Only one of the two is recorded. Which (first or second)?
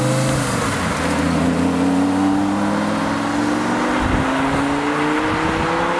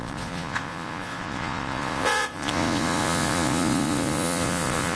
first